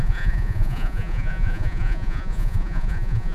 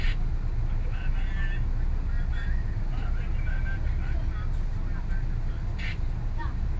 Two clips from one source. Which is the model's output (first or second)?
first